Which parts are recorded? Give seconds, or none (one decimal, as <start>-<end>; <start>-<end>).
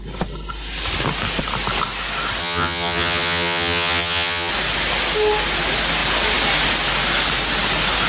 0.0-2.4; 4.5-8.1